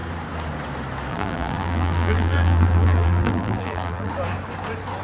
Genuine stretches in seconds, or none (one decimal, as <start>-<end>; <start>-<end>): 0.0-1.1; 4.1-5.0